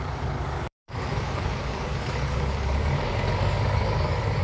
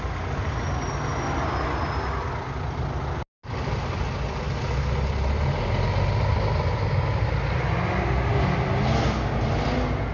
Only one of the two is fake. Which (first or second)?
first